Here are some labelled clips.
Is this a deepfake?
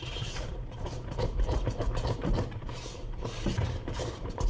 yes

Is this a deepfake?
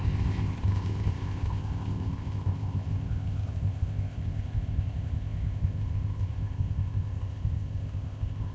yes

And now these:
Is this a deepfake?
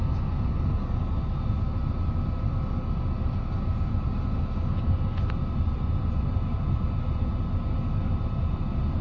no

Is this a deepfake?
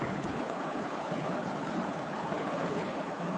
yes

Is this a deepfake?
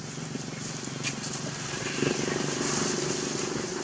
no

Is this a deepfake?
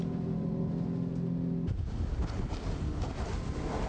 no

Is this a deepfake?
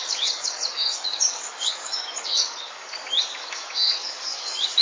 yes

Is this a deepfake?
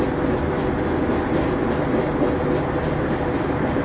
no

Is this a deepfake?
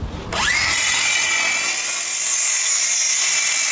no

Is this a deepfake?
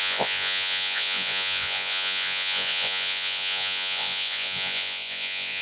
yes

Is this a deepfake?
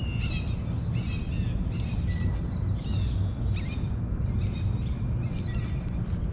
no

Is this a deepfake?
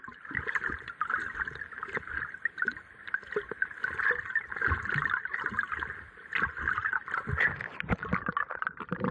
no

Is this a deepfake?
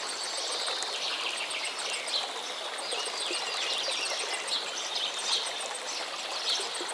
no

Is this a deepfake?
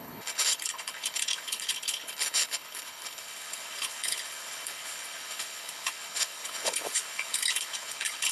yes